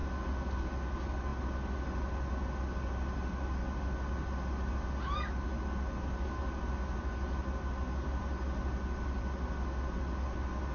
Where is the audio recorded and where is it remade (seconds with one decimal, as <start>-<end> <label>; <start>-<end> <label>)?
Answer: 0.0-10.7 recorded